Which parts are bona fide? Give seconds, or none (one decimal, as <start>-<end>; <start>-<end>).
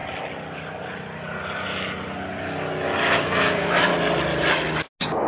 0.0-3.2; 3.9-5.3